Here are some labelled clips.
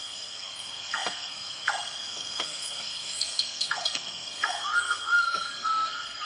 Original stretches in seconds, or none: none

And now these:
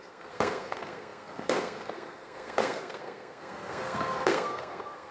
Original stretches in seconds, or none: none

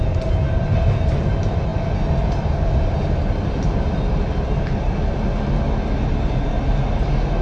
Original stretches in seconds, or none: 0.0-7.4

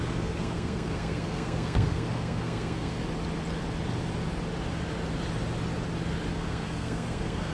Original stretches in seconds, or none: 3.0-6.3